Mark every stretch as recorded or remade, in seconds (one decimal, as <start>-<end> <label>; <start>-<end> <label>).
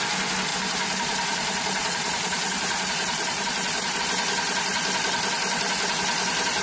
0.0-0.5 recorded; 0.5-4.0 remade; 4.0-6.6 recorded